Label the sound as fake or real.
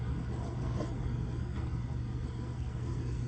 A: fake